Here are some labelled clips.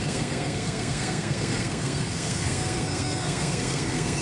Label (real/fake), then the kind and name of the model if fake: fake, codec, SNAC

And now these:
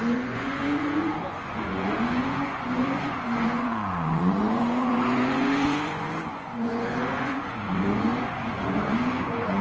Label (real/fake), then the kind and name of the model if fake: fake, vocoder, Vocos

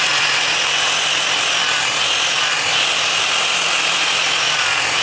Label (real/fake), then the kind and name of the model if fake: real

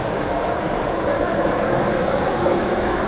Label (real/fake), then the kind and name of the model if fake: fake, codec, DAC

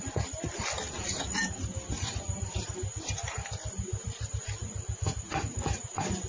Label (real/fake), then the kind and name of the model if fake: real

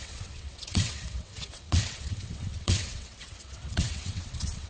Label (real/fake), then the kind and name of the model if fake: fake, vocoder, WaveNeXt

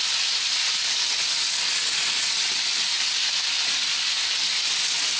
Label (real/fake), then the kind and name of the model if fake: real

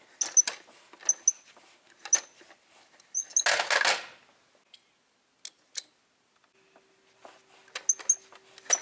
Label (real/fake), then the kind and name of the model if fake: real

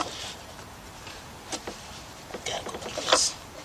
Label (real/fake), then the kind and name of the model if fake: fake, vocoder, BigVGAN v2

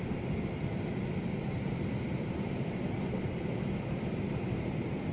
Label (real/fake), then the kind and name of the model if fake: fake, vocoder, BigVGAN v2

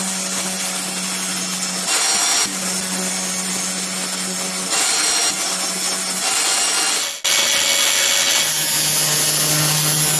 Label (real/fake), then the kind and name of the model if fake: real